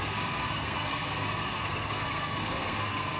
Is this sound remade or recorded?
remade